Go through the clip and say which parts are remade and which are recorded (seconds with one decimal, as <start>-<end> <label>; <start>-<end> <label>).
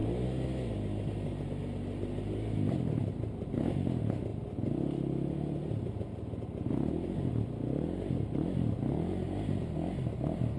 0.0-10.6 recorded